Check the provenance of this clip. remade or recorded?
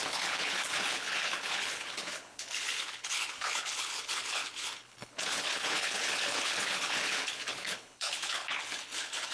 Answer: remade